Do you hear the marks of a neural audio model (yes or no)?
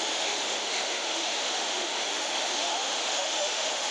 yes